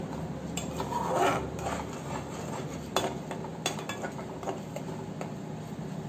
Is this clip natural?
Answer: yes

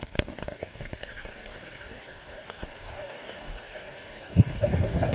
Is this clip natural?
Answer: no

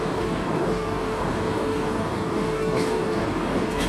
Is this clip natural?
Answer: no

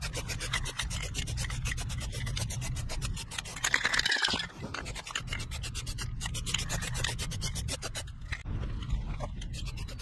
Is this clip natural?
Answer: yes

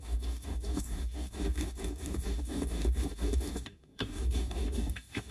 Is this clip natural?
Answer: no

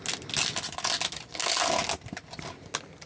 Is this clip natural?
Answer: yes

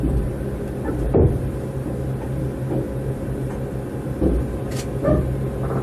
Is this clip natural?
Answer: yes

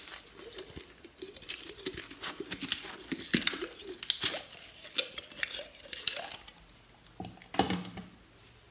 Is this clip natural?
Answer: yes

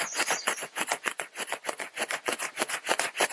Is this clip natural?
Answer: no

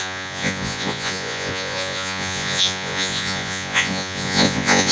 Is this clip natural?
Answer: no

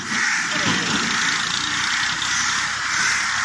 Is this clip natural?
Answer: yes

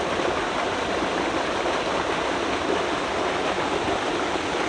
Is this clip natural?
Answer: yes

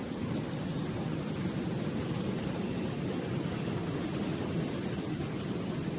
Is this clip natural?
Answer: yes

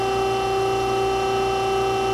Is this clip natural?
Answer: yes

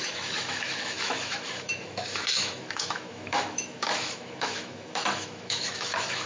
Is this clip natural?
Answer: no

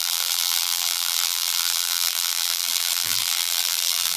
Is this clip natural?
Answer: no